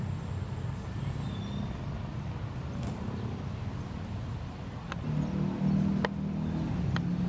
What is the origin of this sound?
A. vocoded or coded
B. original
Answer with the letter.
B